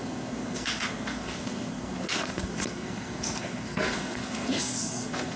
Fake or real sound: fake